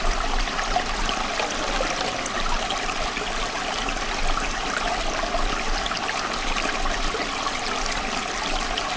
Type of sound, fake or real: real